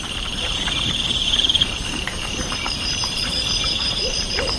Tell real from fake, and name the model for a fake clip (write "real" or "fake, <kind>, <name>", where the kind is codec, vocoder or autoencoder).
fake, vocoder, BigVGAN v2